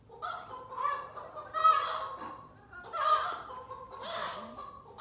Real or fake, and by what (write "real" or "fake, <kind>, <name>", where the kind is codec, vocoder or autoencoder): real